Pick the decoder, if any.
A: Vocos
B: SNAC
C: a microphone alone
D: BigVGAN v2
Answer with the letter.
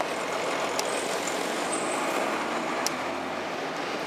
C